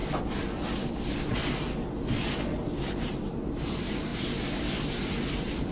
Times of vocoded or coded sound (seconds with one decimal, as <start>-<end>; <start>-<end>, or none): 3.0-4.1; 5.3-5.7